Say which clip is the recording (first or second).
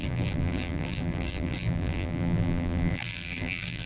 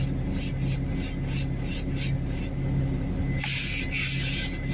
second